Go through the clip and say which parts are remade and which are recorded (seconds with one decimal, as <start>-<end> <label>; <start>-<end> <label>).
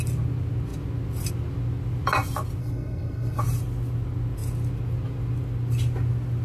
0.0-2.6 recorded; 2.6-3.4 remade; 3.4-6.4 recorded